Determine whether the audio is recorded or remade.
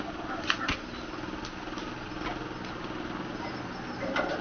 recorded